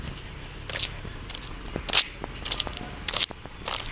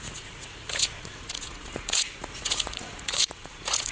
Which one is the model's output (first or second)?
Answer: second